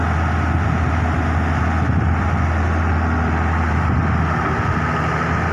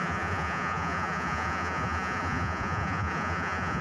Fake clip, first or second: second